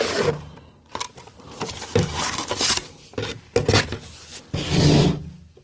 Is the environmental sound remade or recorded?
recorded